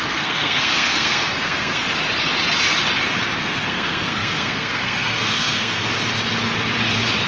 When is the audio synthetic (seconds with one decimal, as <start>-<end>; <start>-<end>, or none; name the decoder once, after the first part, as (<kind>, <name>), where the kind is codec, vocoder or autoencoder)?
0.0-1.8 (codec, SNAC); 3.4-5.9